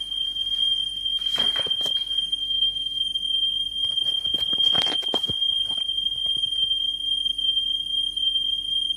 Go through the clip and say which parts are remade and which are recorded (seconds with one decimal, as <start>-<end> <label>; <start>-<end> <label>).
0.0-2.4 recorded; 2.4-3.0 remade; 3.0-9.0 recorded